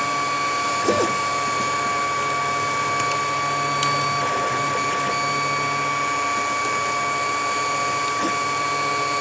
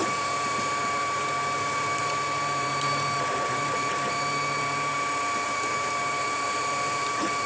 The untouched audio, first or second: first